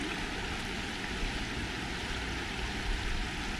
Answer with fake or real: real